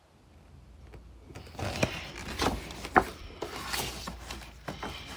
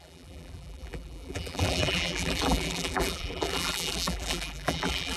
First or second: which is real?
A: first